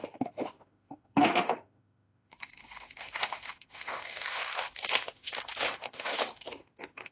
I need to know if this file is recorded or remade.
remade